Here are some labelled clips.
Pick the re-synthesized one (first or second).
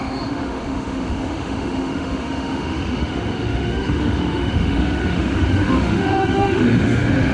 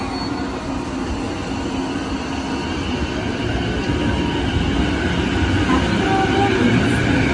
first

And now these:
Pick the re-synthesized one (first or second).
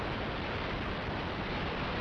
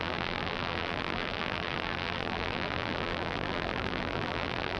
second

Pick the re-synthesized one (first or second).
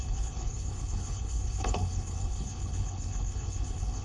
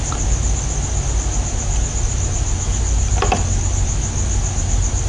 first